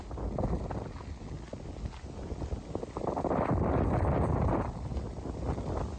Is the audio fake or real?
real